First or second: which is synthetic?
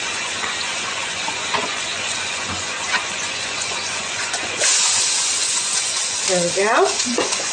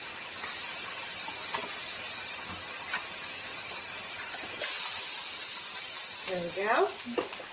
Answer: first